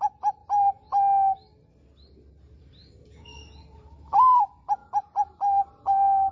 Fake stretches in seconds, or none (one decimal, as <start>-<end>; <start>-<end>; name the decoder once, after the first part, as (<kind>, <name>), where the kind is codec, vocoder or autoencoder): none